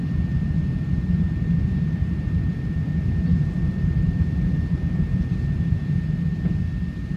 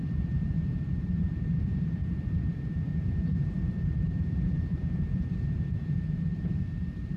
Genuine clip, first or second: first